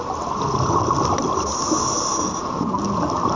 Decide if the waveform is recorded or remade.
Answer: recorded